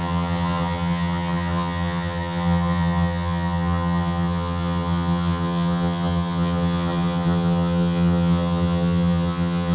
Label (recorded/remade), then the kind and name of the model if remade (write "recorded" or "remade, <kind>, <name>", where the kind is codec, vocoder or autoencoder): remade, vocoder, HiFi-GAN